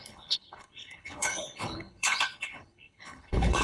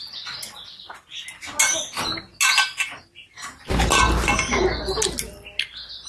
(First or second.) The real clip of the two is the second